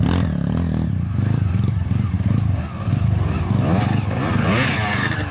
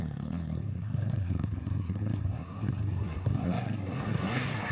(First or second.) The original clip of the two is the first